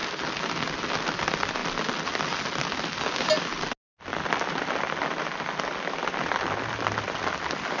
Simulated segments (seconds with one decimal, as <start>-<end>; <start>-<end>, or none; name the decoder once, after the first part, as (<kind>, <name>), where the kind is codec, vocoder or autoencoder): none